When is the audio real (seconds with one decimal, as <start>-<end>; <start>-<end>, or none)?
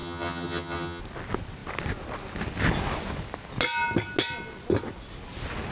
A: 1.0-5.7